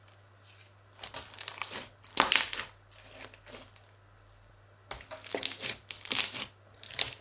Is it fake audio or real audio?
real